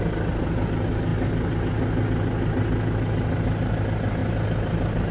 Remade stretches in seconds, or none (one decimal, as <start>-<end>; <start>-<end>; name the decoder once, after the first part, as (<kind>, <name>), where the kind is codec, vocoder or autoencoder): none